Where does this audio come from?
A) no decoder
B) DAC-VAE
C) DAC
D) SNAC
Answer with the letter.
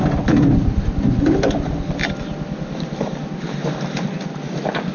A